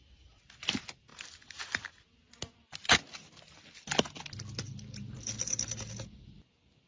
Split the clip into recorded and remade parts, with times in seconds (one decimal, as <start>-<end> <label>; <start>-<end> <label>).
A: 0.0-6.9 recorded